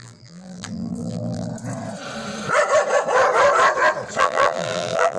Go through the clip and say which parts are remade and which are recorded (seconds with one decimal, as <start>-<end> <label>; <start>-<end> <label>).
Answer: 0.0-1.5 remade; 1.5-4.2 recorded; 4.2-5.2 remade